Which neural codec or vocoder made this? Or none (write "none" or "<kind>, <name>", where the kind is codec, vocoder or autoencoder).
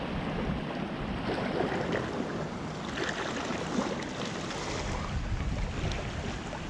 none